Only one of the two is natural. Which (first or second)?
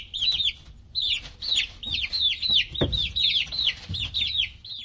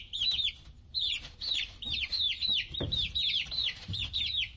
first